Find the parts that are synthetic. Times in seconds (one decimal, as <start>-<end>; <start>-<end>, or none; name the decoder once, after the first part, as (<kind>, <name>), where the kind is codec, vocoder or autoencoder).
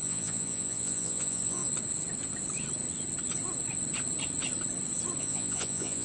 0.0-1.6 (vocoder, Vocos); 5.2-6.0